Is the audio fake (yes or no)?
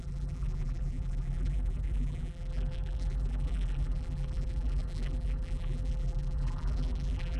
yes